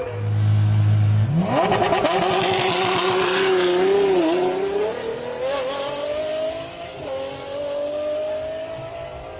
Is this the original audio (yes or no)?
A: yes